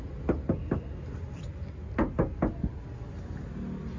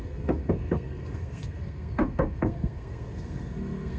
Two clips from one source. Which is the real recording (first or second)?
first